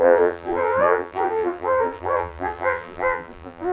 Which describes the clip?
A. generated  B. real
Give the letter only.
A